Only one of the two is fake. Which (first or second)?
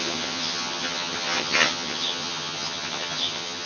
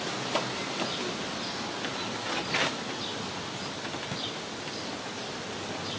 first